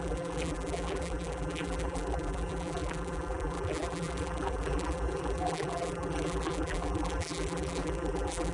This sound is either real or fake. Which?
fake